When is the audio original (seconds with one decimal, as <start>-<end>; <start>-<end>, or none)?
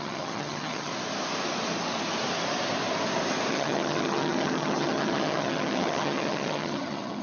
0.9-3.5